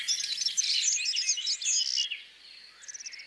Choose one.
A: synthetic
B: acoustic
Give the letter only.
B